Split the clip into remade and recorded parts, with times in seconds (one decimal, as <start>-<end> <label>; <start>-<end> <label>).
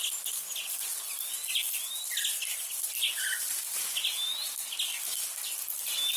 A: 0.0-6.2 recorded